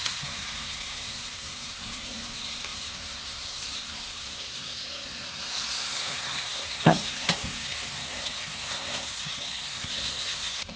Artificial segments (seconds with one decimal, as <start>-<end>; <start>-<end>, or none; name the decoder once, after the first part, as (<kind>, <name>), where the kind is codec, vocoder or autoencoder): 0.0-10.8 (codec, SNAC)